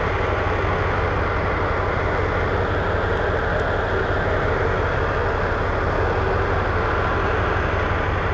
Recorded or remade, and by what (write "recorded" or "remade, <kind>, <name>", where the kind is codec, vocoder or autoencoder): recorded